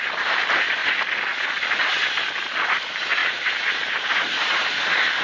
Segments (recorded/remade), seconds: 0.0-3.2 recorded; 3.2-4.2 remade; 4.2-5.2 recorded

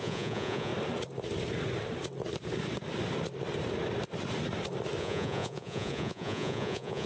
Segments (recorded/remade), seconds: 0.0-0.7 remade; 0.7-5.0 recorded; 5.0-7.1 remade

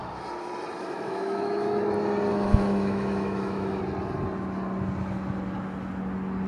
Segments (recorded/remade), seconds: 0.0-0.8 recorded; 0.8-1.8 remade; 1.8-2.3 recorded; 2.3-3.8 remade; 3.8-6.5 recorded

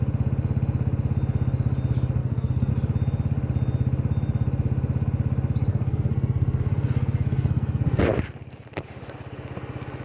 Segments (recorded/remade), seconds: 0.0-2.2 recorded; 2.2-2.7 remade; 2.7-5.7 recorded; 5.7-8.0 remade; 8.0-10.0 recorded

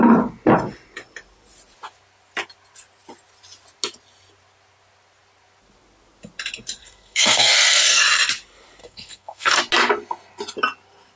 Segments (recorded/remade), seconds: 0.0-6.8 recorded; 6.8-8.0 remade; 8.0-8.8 recorded; 8.8-9.6 remade; 9.6-11.2 recorded

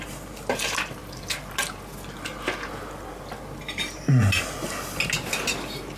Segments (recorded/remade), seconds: 0.0-6.0 recorded

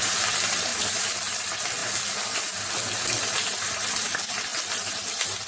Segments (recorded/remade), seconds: 0.0-5.5 recorded

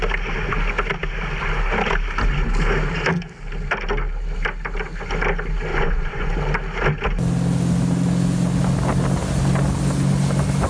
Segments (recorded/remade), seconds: 0.0-5.7 recorded; 5.7-6.3 remade; 6.3-10.7 recorded